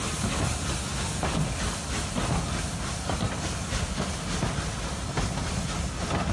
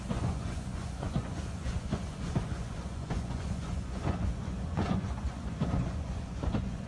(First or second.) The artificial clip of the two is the second